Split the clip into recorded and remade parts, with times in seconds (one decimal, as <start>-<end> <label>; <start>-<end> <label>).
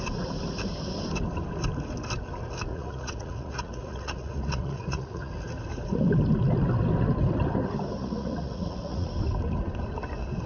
0.0-2.7 recorded; 2.7-5.3 remade; 5.3-8.0 recorded; 8.0-9.1 remade; 9.1-10.5 recorded